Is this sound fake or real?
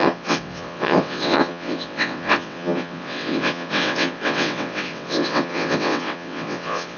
fake